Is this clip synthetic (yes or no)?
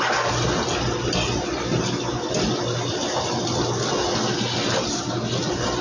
no